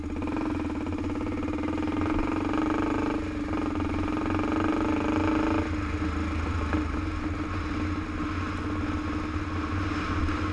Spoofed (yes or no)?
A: no